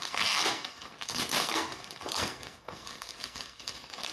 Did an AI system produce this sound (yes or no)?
yes